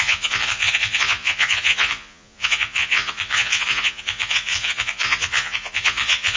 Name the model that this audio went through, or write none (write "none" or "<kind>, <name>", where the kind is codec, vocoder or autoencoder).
vocoder, Vocos